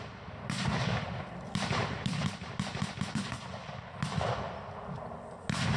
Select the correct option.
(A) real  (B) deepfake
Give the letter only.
A